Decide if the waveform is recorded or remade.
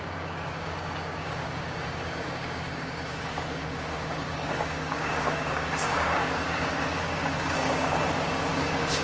remade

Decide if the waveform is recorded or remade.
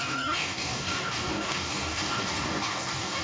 remade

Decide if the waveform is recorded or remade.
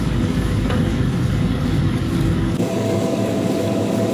remade